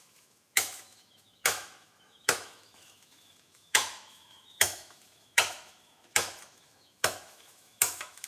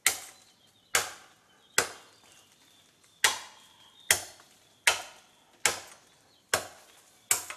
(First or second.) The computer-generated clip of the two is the first